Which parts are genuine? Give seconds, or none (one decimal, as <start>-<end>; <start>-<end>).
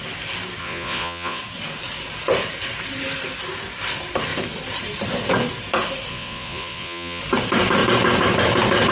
0.0-0.6; 1.4-6.1; 7.2-8.9